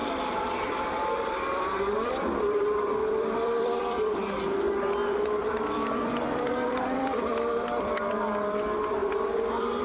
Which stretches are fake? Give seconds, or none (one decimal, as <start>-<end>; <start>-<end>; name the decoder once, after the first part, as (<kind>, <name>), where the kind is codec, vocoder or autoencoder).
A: 0.0-4.1 (vocoder, BigVGAN v2); 5.0-8.1; 9.0-9.8